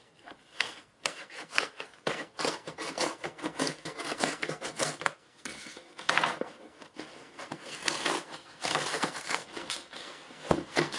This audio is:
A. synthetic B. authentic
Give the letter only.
A